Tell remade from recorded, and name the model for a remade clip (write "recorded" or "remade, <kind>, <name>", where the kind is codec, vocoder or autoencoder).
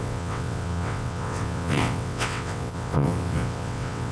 remade, vocoder, WaveNeXt